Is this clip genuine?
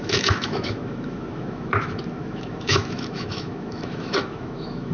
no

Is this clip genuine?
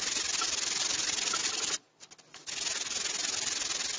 yes